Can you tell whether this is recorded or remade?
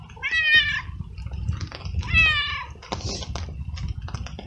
recorded